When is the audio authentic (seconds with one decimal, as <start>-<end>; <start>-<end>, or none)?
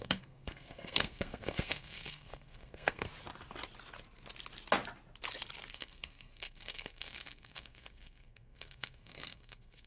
3.1-5.7